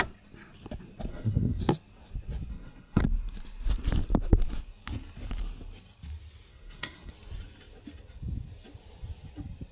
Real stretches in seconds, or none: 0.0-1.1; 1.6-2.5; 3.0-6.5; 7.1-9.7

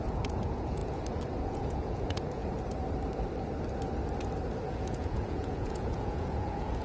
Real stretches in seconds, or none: 0.8-1.4; 2.4-4.7

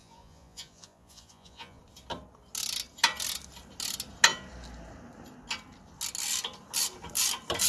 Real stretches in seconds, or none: 1.8-7.7

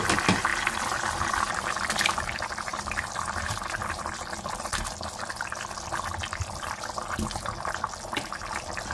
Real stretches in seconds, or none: 0.0-8.9

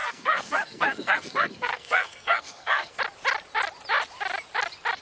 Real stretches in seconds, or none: 3.0-5.0